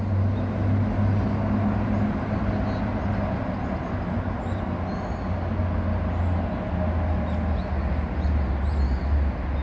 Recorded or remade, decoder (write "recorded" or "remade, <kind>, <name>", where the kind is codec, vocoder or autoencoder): recorded